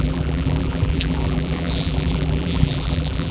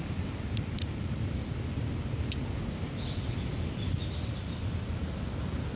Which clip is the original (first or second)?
second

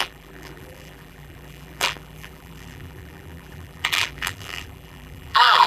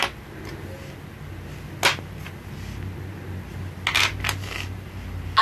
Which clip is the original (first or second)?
second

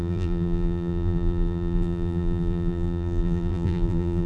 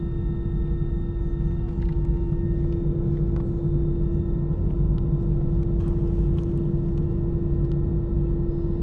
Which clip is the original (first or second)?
second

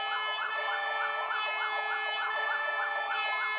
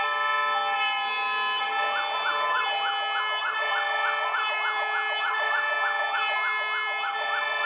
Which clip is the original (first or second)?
second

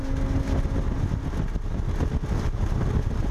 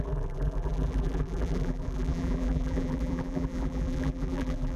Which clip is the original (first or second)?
first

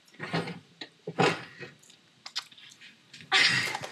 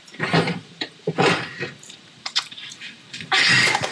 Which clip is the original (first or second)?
first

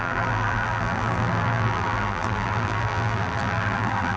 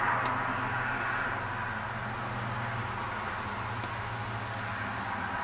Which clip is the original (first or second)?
second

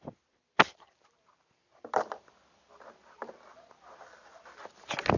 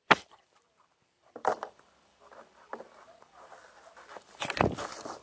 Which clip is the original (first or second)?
first